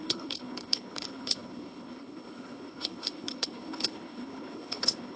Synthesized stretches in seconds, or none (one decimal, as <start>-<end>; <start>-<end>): 0.0-5.2